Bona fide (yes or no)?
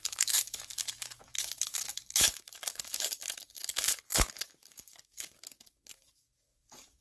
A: no